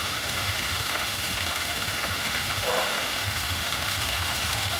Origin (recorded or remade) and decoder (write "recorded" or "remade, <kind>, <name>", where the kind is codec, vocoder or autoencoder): remade, autoencoder, DAC-VAE